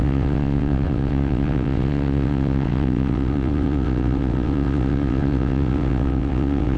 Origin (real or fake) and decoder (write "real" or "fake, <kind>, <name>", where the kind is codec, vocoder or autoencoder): fake, vocoder, WaveNeXt